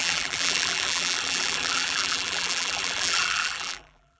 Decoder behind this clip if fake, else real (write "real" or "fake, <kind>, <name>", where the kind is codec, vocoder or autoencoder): fake, vocoder, BigVGAN v2